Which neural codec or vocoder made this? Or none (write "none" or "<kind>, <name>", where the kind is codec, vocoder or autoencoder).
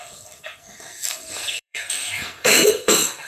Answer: codec, SNAC